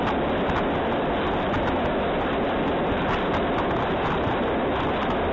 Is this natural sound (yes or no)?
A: yes